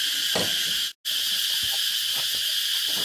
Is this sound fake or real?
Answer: real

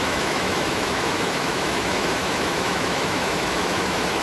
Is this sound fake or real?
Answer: fake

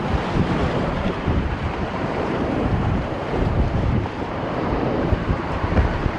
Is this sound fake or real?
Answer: fake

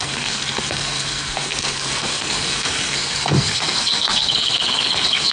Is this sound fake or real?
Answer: fake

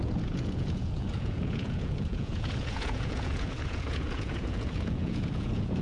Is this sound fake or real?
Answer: fake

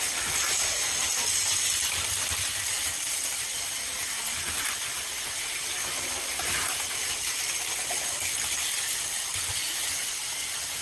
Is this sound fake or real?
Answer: real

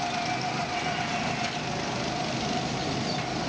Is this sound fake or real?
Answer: real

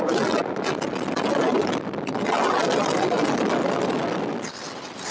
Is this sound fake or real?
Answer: real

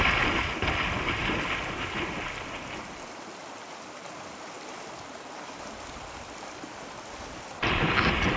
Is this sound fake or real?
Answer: real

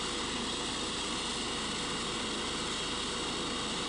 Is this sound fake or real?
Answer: real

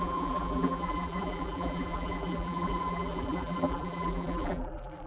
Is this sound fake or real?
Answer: fake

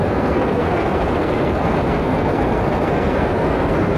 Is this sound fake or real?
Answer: fake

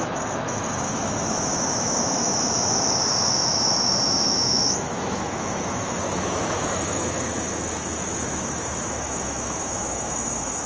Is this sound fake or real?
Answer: fake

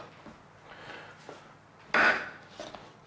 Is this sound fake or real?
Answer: real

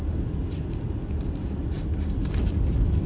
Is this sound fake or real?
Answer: real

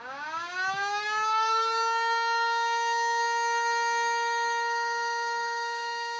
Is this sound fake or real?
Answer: fake